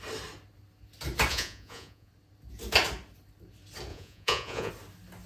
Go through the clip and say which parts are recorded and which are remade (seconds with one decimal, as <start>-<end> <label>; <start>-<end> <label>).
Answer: 0.0-1.3 recorded; 1.3-2.1 remade; 2.1-3.9 recorded; 3.9-4.7 remade; 4.7-5.3 recorded